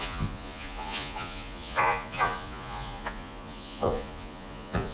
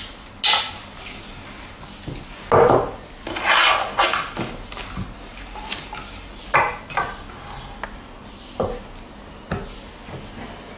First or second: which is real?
second